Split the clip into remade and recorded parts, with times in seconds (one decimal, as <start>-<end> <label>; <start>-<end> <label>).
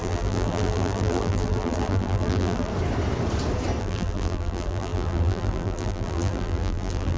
0.0-2.7 remade; 2.7-3.8 recorded; 3.8-7.2 remade